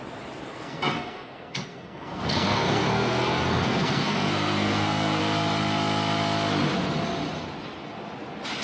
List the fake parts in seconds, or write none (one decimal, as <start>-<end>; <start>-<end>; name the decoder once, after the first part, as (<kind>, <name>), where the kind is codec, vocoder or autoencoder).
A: 0.5-5.2 (codec, SNAC)